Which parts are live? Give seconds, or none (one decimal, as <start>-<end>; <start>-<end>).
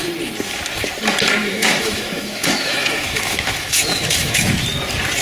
0.0-1.4; 4.5-5.2